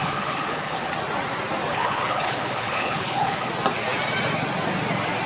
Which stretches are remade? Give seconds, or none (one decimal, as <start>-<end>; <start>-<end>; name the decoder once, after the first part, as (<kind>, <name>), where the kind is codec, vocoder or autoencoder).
0.0-0.9 (codec, HILCodec); 1.7-3.5